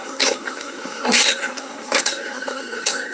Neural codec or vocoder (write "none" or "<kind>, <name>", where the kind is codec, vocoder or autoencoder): codec, SNAC